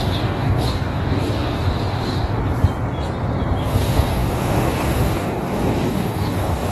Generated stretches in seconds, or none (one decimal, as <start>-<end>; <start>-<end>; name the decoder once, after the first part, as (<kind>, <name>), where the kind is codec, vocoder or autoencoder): 0.0-2.4 (codec, DAC); 3.6-6.7